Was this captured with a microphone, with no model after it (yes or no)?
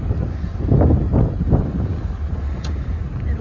yes